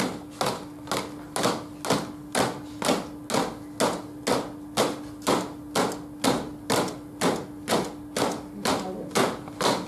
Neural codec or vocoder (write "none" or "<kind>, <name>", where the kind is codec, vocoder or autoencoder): none